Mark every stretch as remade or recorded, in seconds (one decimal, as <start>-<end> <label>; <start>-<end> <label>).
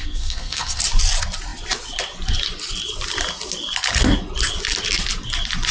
0.0-0.8 remade; 0.8-5.7 recorded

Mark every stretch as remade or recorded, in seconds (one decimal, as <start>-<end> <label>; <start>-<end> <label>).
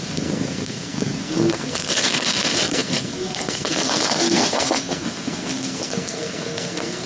0.0-7.1 remade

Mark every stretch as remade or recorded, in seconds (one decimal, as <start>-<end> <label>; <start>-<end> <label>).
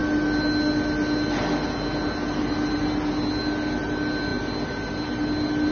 0.0-5.7 recorded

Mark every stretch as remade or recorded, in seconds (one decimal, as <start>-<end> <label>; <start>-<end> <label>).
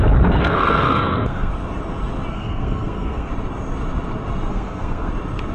0.0-0.4 recorded; 0.4-1.5 remade; 1.5-2.3 recorded; 2.3-3.3 remade; 3.3-4.5 recorded; 4.5-5.1 remade; 5.1-5.5 recorded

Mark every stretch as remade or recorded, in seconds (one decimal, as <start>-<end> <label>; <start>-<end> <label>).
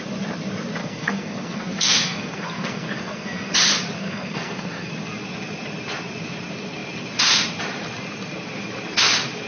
0.0-0.8 recorded; 0.8-3.5 remade; 3.5-4.0 recorded; 4.0-4.9 remade; 4.9-9.5 recorded